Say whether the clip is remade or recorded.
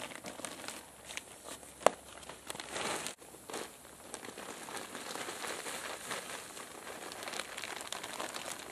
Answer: recorded